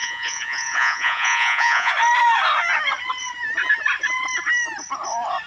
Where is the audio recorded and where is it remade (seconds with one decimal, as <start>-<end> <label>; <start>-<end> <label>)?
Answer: 0.0-1.9 remade; 1.9-5.5 recorded